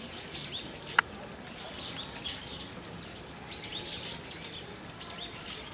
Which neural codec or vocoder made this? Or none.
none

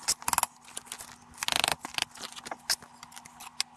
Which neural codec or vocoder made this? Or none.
none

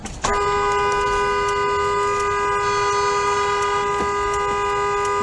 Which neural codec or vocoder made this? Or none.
none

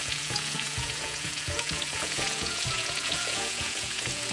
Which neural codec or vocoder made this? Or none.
vocoder, Vocos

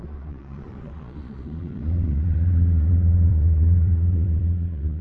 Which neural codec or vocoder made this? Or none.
vocoder, Vocos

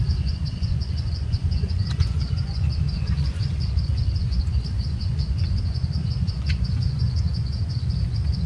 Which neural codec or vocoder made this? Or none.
vocoder, Vocos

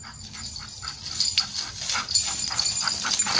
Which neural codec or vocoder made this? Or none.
none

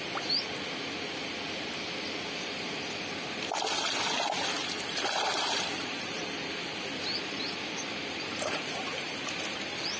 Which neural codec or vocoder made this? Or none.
none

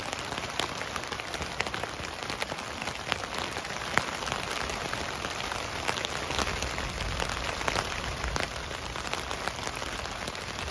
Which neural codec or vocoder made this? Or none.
none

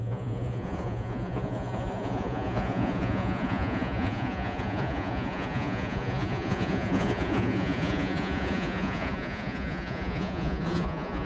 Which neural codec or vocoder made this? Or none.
vocoder, Vocos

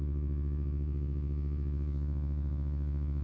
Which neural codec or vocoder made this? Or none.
vocoder, Vocos